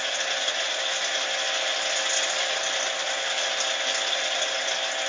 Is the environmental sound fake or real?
real